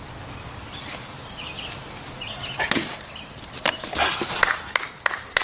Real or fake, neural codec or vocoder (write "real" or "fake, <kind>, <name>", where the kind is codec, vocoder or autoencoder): real